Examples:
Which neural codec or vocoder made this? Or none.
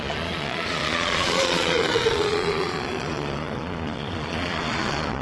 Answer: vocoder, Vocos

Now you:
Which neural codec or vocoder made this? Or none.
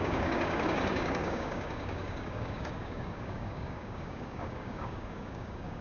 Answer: codec, DAC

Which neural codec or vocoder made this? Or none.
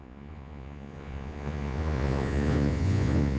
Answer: vocoder, Vocos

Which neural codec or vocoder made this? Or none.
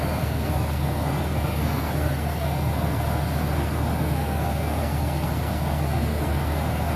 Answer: codec, SNAC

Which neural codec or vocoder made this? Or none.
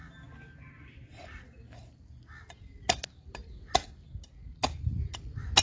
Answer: none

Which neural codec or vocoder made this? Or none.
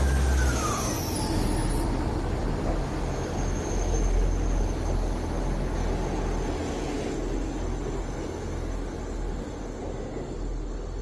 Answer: none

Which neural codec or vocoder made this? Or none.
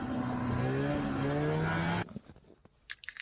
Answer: none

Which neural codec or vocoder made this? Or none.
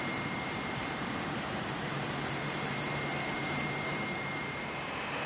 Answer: vocoder, BigVGAN v2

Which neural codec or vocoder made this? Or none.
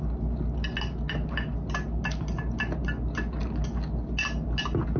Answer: none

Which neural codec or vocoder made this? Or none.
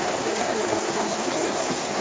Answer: codec, SNAC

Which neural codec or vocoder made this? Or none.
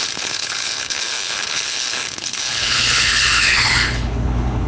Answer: codec, HILCodec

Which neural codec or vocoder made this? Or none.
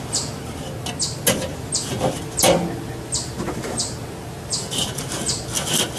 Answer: none